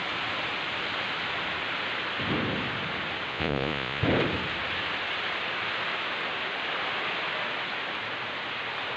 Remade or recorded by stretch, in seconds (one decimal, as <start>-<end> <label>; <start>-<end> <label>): 0.0-3.3 recorded; 3.3-4.0 remade; 4.0-9.0 recorded